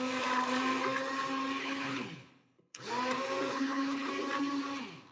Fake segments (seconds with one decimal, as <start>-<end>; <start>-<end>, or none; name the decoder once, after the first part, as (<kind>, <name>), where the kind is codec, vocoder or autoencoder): 1.6-2.9 (codec, HILCodec); 3.5-4.1